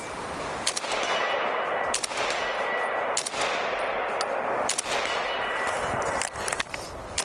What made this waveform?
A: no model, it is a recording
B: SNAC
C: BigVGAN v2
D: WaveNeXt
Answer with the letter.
A